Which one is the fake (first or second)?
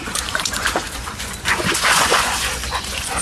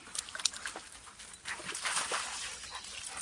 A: first